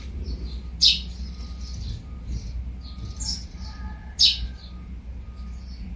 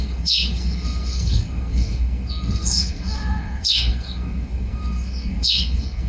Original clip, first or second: first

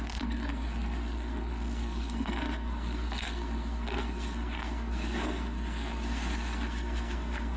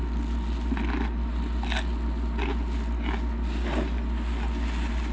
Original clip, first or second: second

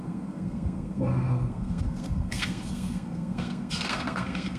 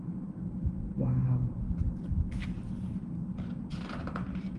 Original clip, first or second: second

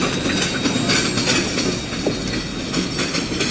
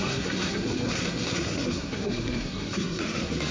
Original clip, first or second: first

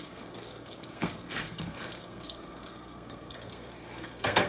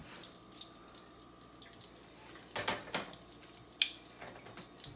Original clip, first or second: second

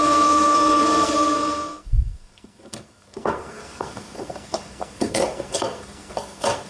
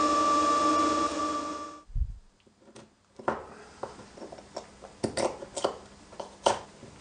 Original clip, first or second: second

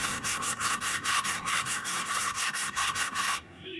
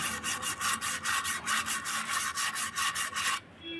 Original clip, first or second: second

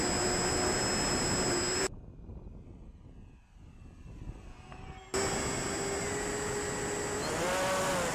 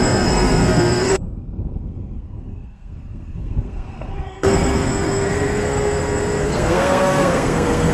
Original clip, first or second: first